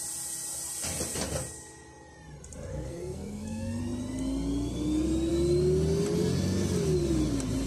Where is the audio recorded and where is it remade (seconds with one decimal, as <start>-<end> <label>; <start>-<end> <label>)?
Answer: 0.0-2.7 recorded; 2.7-3.8 remade; 3.8-7.7 recorded